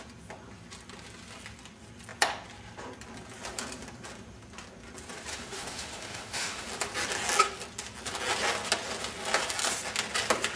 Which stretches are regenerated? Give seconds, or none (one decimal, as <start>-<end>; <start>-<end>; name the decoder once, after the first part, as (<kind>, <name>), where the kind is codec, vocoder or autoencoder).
5.3-6.7 (autoencoder, DAC-VAE)